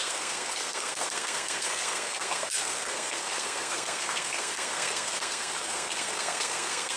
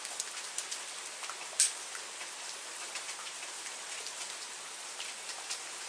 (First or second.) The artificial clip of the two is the first